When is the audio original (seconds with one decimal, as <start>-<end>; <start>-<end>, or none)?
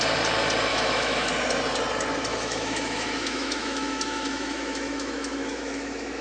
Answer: 0.0-0.7; 1.3-2.3